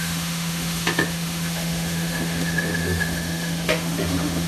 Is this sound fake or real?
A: fake